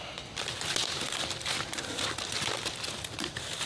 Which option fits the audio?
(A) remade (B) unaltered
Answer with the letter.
B